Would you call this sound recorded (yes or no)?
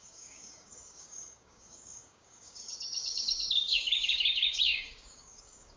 no